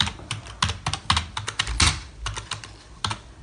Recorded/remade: recorded